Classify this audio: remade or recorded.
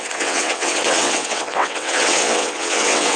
remade